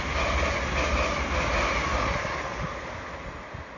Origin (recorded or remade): recorded